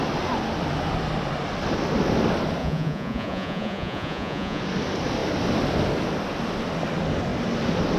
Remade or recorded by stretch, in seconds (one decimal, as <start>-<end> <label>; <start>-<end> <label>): 0.0-2.6 recorded; 2.6-4.6 remade; 4.6-8.0 recorded

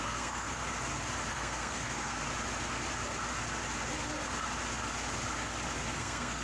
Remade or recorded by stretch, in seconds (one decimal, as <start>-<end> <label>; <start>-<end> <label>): 0.0-0.6 remade; 0.6-1.3 recorded; 1.3-2.2 remade; 2.2-6.0 recorded; 6.0-6.4 remade

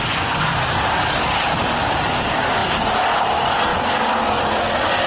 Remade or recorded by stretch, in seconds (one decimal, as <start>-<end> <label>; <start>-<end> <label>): 0.0-0.6 remade; 0.6-5.1 recorded

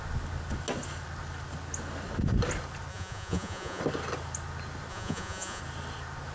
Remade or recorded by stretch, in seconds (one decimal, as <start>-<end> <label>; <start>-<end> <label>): 0.0-2.9 recorded; 2.9-3.8 remade; 3.8-4.9 recorded; 4.9-5.6 remade; 5.6-6.3 recorded

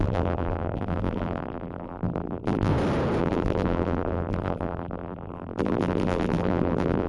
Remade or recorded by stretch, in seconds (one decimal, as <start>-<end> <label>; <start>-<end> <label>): 0.0-2.7 remade; 2.7-3.2 recorded; 3.2-7.1 remade

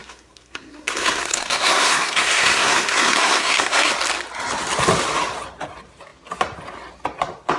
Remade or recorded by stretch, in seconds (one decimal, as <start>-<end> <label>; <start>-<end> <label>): 0.0-3.9 remade; 3.9-7.6 recorded

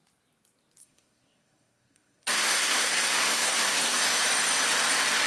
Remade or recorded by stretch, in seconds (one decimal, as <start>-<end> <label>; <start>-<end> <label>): 0.0-0.8 recorded; 0.8-4.0 remade; 4.0-5.3 recorded